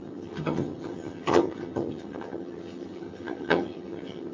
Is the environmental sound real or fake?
fake